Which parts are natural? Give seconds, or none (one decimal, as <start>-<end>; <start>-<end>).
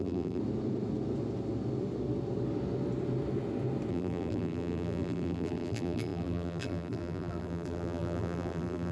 0.4-3.9